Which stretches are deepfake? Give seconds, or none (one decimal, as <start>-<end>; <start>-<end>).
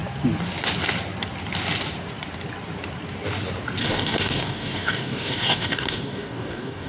3.8-6.9